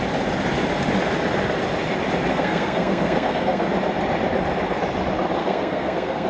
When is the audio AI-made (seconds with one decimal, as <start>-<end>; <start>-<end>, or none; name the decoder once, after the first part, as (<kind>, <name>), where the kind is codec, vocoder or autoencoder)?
2.3-3.7 (codec, SNAC); 5.4-6.3